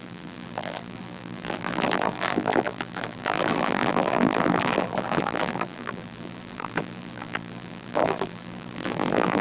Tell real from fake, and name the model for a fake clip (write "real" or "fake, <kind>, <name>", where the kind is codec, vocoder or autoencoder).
fake, vocoder, BigVGAN v2